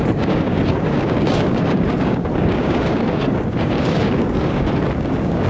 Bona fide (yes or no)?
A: no